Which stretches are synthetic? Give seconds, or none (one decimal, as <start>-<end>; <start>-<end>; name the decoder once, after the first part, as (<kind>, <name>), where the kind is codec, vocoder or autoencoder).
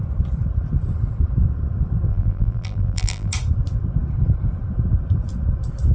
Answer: 2.1-3.3 (vocoder, BigVGAN v2)